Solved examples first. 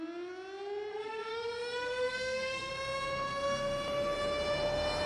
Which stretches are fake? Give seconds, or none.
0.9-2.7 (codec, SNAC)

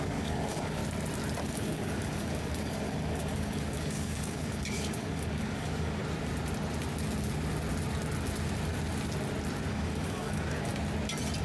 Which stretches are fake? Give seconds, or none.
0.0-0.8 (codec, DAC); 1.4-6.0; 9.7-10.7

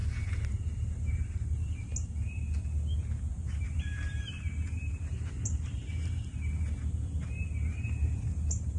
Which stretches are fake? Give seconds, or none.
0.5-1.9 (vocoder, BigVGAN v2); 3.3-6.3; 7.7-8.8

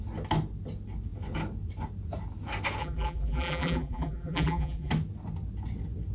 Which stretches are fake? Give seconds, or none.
2.8-4.9 (vocoder, BigVGAN v2)

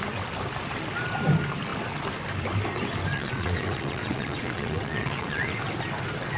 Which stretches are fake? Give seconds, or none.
3.1-5.7 (vocoder, WaveNeXt)

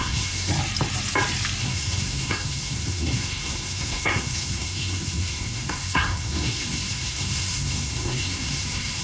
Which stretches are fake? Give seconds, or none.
0.0-0.5 (codec, SNAC); 1.6-9.0

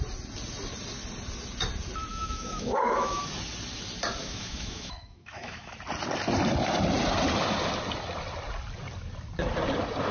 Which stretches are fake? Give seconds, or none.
2.1-3.2 (autoencoder, DAC-VAE); 4.2-5.7